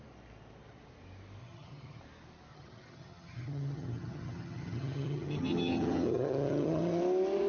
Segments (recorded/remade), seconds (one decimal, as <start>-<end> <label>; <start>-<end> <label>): 0.0-1.4 recorded; 1.4-2.0 remade; 2.0-2.5 recorded; 2.5-7.0 remade; 7.0-7.5 recorded

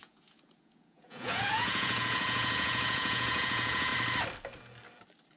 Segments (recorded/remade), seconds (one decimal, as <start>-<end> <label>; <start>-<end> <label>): 0.0-3.9 remade; 3.9-5.4 recorded

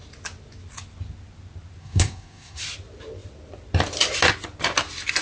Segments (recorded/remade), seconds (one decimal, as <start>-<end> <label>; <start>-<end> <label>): 0.0-1.8 recorded; 1.8-2.6 remade; 2.6-5.2 recorded